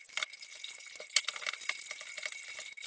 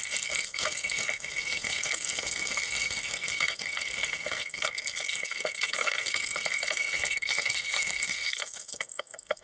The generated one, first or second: second